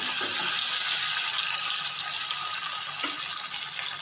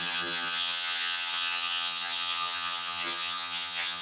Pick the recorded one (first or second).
first